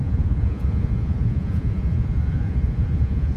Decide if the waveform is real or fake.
fake